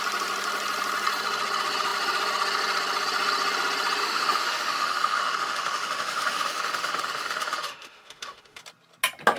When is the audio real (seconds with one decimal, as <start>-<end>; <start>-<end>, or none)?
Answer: 0.0-4.0; 8.6-9.4